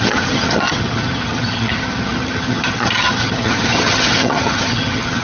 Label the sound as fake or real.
fake